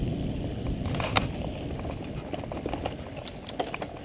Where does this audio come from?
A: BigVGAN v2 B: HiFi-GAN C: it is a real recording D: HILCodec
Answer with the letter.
C